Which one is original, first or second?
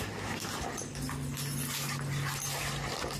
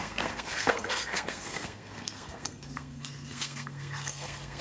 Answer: first